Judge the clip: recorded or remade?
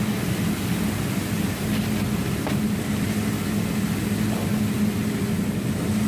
recorded